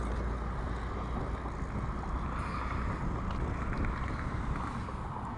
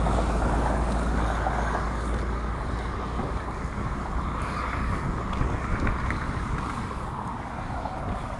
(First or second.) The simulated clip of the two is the second